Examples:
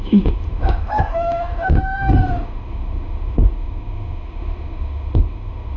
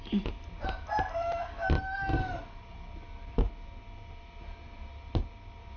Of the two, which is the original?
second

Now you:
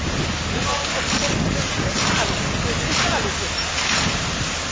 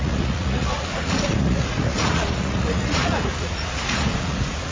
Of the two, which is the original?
first